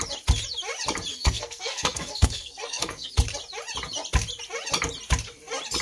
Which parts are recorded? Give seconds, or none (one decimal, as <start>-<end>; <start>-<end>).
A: 0.0-1.1; 3.1-5.8